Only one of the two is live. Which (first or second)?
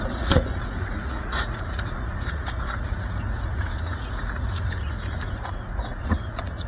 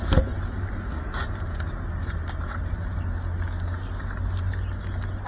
second